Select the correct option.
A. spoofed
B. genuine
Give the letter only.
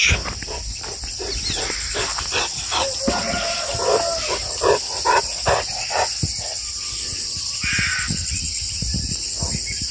B